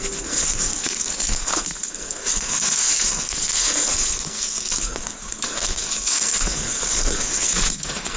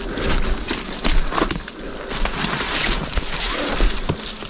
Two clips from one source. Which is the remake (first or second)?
first